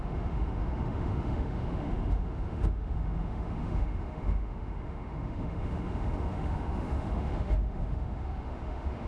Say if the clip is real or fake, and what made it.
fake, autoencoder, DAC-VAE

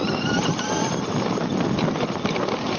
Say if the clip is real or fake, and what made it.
fake, vocoder, BigVGAN v2